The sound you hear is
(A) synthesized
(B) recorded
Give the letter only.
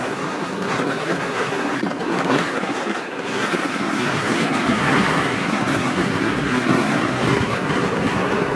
A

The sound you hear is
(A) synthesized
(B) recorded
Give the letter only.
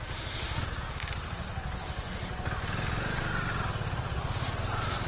B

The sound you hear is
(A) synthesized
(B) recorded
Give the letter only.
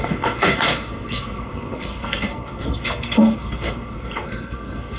A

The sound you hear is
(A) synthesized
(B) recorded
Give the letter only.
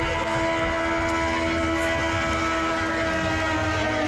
B